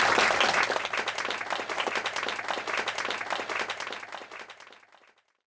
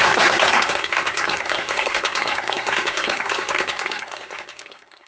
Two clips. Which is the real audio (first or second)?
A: first